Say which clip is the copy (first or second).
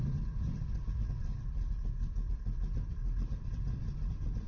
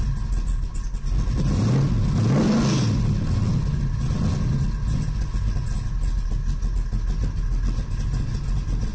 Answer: first